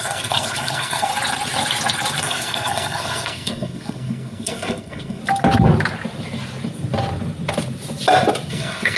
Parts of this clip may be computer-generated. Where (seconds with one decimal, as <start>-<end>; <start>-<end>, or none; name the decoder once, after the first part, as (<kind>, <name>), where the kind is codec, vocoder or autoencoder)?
0.0-1.1 (codec, SNAC); 2.2-5.2; 8.5-9.0